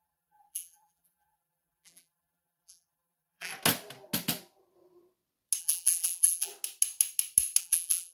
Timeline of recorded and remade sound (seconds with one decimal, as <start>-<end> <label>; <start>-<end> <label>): 0.0-3.5 remade; 3.5-5.6 recorded; 5.6-6.5 remade; 6.5-7.6 recorded; 7.6-8.1 remade